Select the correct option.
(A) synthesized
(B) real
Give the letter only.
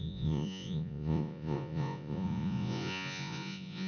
A